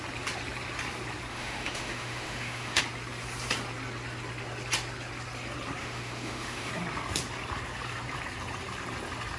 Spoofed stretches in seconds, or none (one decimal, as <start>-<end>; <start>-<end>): 1.3-2.8; 5.8-6.7